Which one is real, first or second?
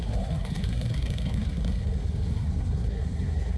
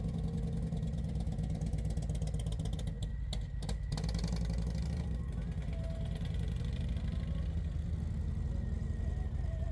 second